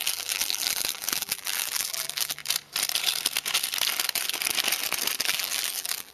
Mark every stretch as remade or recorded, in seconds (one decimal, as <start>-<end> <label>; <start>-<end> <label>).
0.0-2.4 remade; 2.4-5.2 recorded; 5.2-6.1 remade